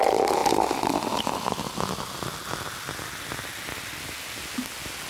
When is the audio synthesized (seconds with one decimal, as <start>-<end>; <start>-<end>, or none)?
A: none